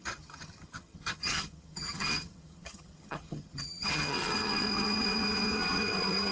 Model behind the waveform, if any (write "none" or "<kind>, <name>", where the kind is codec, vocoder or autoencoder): vocoder, HiFi-GAN